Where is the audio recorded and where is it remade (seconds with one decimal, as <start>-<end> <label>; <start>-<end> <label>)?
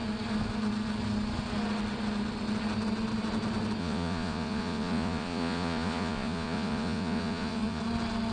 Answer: 0.0-3.8 recorded; 3.8-7.8 remade; 7.8-8.3 recorded